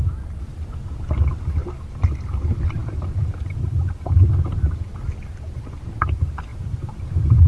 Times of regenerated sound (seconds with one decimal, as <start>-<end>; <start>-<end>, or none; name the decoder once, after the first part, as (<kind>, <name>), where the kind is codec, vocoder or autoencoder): 2.8-4.2 (vocoder, BigVGAN v2); 6.5-7.5